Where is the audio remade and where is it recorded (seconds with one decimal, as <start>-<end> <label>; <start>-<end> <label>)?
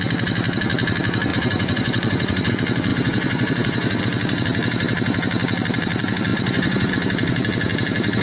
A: 0.0-1.3 recorded; 1.3-2.5 remade; 2.5-2.9 recorded; 2.9-4.0 remade; 4.0-6.3 recorded; 6.3-6.9 remade; 6.9-8.2 recorded